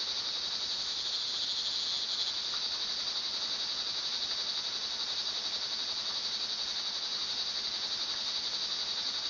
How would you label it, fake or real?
real